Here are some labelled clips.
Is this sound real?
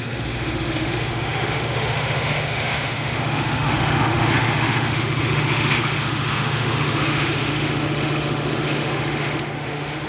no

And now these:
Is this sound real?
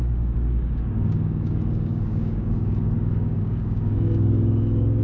no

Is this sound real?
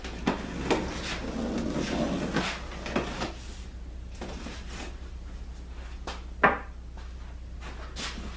yes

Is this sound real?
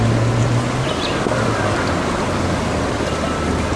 yes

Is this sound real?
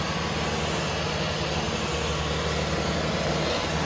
yes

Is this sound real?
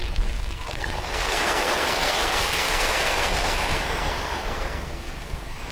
no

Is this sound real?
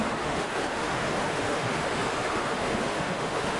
no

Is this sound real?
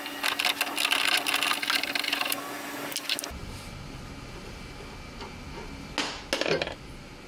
yes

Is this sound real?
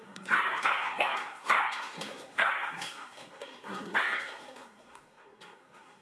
no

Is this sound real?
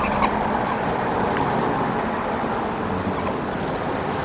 yes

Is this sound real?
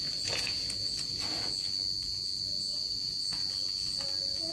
yes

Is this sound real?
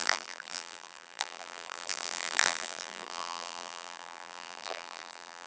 no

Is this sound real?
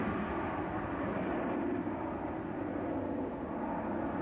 yes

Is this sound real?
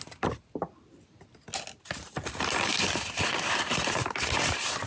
yes